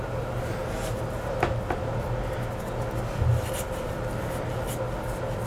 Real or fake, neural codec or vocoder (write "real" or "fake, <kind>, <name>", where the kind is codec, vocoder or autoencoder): real